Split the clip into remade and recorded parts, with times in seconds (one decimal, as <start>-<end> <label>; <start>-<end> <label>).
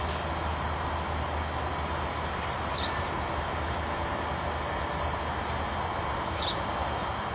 0.0-7.3 recorded